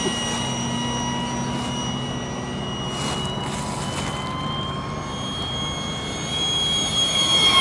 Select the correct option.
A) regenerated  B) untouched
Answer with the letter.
B